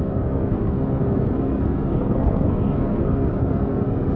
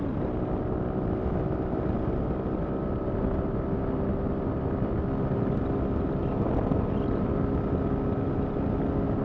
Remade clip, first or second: first